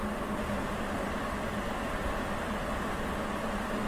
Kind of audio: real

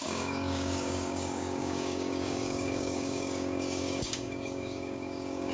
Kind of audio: fake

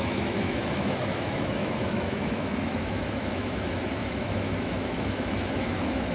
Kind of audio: fake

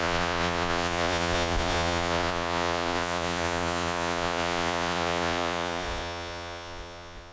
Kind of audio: fake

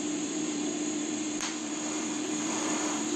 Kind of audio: fake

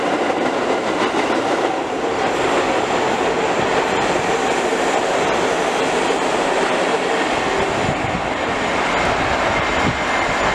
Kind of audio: real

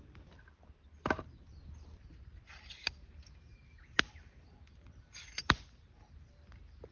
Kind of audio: real